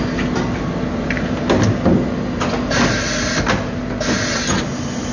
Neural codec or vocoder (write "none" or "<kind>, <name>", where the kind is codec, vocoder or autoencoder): none